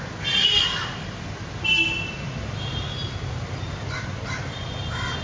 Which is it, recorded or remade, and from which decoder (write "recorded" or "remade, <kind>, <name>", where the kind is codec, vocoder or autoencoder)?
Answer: recorded